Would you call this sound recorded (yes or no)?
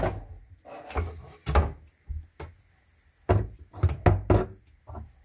yes